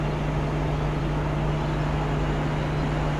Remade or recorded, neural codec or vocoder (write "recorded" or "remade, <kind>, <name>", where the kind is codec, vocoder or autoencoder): recorded